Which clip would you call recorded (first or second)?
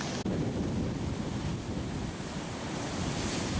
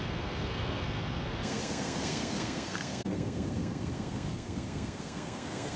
first